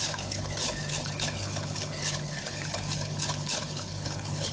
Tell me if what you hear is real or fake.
fake